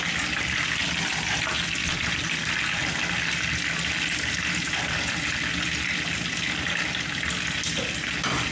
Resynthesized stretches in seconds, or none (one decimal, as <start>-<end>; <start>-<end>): none